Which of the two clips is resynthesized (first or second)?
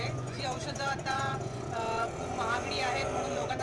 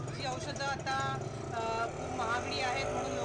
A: first